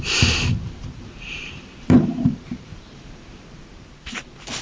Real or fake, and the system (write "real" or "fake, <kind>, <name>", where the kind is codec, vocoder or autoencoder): fake, vocoder, BigVGAN v2